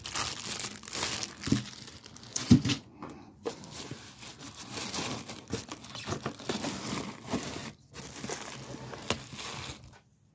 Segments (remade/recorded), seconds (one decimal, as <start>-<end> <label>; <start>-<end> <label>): 0.0-2.3 recorded; 2.3-3.6 remade; 3.6-10.3 recorded